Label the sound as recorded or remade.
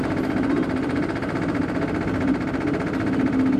recorded